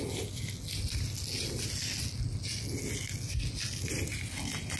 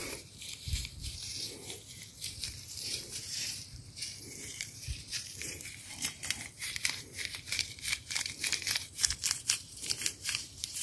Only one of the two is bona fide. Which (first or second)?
first